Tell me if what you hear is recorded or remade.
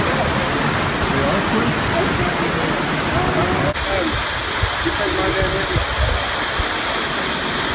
recorded